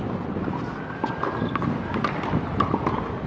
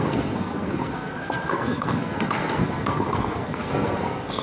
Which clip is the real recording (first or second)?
first